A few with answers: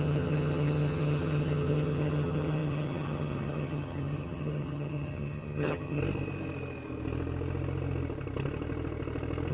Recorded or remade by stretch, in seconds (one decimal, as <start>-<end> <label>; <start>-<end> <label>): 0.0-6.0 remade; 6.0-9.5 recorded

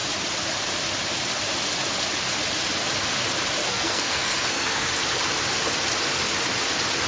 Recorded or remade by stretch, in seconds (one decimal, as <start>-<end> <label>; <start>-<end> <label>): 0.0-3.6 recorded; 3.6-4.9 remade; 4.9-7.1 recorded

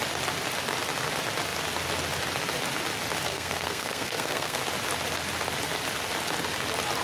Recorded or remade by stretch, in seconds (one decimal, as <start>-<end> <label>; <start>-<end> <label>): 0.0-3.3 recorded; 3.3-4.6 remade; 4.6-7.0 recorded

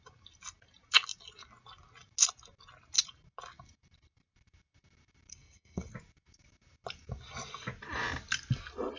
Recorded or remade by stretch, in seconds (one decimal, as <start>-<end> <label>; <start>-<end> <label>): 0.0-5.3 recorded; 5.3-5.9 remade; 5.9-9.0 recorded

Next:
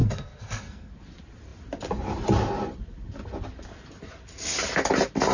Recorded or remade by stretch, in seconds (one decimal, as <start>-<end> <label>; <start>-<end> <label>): 0.0-0.9 remade; 0.9-5.3 recorded

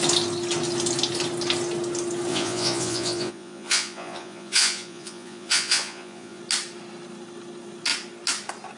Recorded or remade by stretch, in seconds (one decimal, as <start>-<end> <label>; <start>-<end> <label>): 0.0-2.3 recorded; 2.3-6.4 remade; 6.4-8.8 recorded